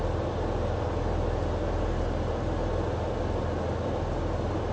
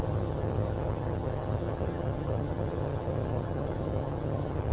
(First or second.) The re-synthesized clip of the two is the second